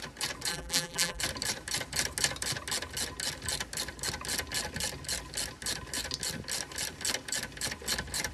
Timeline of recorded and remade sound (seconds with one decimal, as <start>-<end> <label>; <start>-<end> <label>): 0.0-0.5 recorded; 0.5-1.2 remade; 1.2-8.3 recorded